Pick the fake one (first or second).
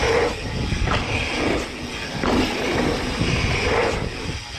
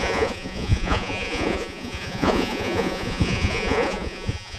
second